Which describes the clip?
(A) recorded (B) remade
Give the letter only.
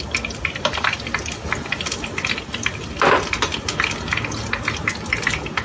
A